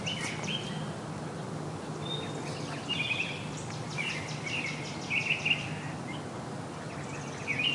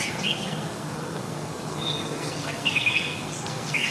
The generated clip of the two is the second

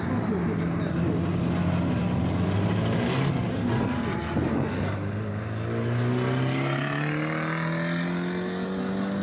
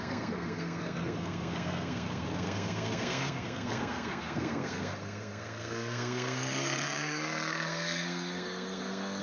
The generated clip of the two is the second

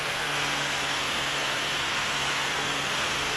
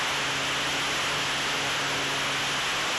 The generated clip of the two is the first